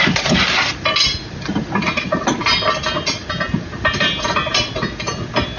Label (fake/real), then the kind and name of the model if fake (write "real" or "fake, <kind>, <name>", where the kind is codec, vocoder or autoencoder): real